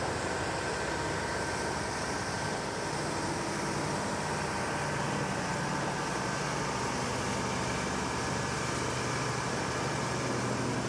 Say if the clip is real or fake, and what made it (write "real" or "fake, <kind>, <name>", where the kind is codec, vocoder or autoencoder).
real